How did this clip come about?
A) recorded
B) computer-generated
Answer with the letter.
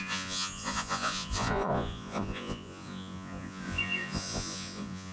B